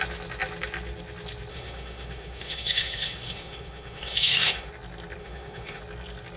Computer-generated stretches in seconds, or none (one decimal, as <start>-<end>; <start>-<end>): 1.5-4.7; 5.2-5.8